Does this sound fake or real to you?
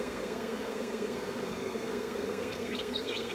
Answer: fake